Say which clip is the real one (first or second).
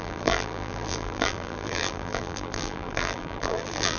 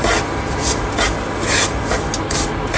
second